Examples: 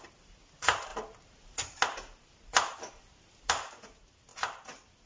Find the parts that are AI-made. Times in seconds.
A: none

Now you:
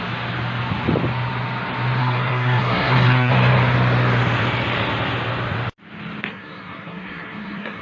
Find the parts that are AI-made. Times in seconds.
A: 2.0-3.3 (codec, SNAC); 6.3-7.8